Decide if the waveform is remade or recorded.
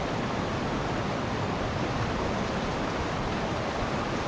recorded